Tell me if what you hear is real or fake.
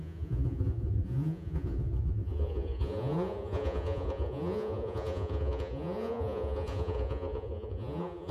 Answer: fake